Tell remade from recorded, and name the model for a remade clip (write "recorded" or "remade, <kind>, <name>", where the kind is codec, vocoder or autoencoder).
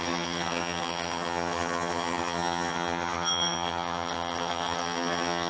remade, vocoder, HiFi-GAN